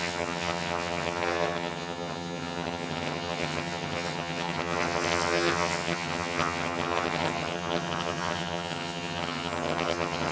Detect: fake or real fake